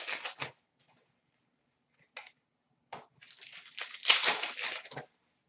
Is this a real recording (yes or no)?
yes